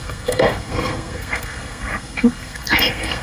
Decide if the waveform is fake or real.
fake